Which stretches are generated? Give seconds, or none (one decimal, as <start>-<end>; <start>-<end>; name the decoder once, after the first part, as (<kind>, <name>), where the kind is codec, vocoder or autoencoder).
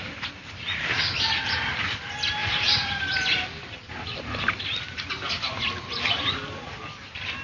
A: 2.4-6.3 (vocoder, BigVGAN v2)